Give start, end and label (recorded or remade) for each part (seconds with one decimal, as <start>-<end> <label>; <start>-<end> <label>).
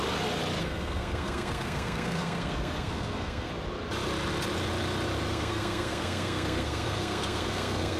0.0-0.6 recorded; 0.6-3.5 remade; 3.5-5.3 recorded; 5.3-8.0 remade